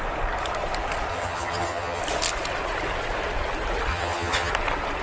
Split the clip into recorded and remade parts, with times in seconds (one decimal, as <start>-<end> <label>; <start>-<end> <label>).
0.0-1.1 recorded; 1.1-2.0 remade; 2.0-3.9 recorded; 3.9-4.5 remade; 4.5-5.0 recorded